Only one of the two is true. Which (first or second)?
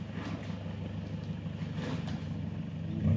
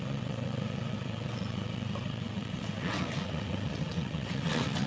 first